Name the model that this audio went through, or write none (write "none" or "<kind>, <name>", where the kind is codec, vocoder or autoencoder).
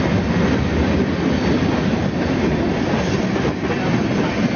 none